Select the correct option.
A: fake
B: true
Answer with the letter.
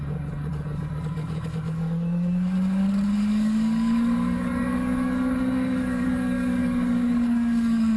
A